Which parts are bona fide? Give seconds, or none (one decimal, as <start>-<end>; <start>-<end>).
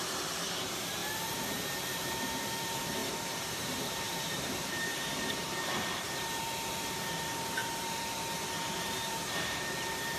none